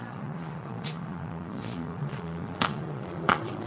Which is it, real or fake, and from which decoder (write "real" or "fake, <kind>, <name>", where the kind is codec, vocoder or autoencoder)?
fake, vocoder, Vocos